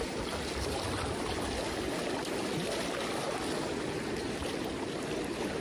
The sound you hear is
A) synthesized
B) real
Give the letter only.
B